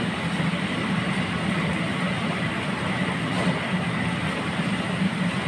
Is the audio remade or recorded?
recorded